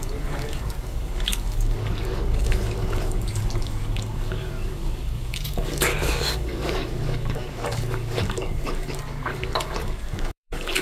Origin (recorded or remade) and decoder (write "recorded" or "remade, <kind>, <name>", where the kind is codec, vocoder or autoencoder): remade, codec, DAC